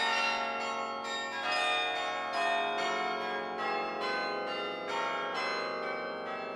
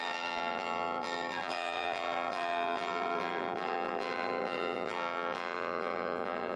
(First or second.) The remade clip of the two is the second